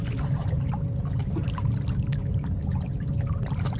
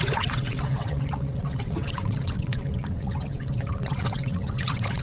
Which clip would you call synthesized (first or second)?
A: second